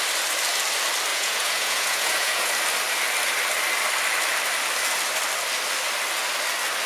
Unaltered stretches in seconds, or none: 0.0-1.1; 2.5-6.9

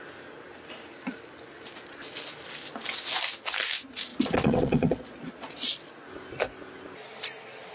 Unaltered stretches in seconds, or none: 0.0-4.1; 5.9-7.7

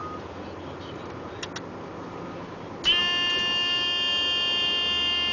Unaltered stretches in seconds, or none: 0.0-5.3

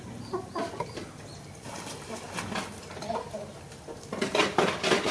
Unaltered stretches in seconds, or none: 0.0-5.1